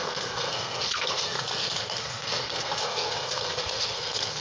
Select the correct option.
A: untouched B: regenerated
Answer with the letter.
B